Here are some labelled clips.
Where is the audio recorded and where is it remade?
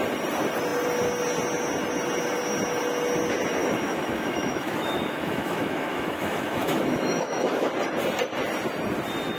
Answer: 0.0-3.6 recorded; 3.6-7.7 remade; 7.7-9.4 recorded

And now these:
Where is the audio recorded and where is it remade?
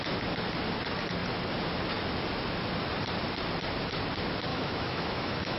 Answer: 0.0-4.5 recorded; 4.5-5.6 remade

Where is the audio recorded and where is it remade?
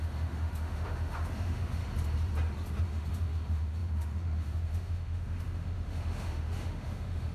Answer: 0.0-1.8 remade; 1.8-2.8 recorded; 2.8-7.3 remade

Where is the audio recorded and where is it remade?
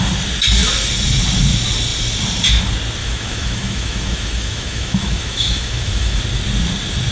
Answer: 0.0-3.0 recorded; 3.0-6.2 remade; 6.2-7.1 recorded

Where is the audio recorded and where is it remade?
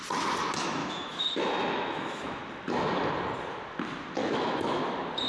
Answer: 0.0-0.8 recorded; 0.8-2.4 remade; 2.4-4.2 recorded; 4.2-4.8 remade; 4.8-5.3 recorded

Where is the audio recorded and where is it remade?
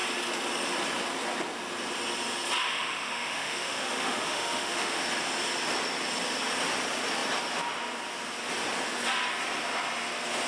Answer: 0.0-2.6 recorded; 2.6-5.0 remade; 5.0-10.5 recorded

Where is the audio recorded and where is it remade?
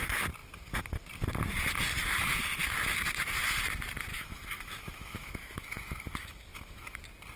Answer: 0.0-4.1 recorded; 4.1-7.0 remade; 7.0-7.4 recorded